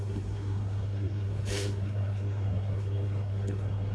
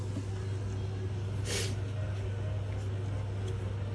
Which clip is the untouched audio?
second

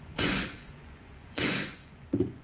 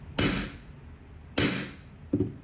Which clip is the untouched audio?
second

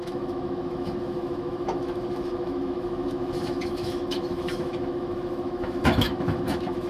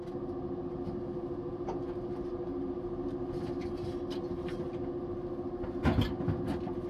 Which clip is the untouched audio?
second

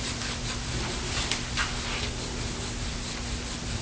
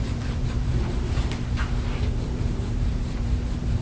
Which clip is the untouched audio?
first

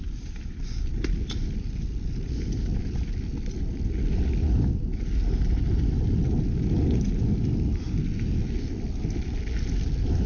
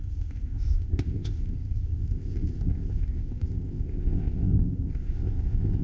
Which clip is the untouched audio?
first